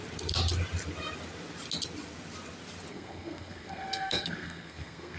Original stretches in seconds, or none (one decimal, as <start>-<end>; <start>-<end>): 0.0-2.9